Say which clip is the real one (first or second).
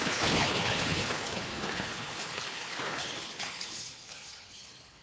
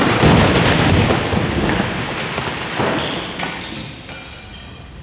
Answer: second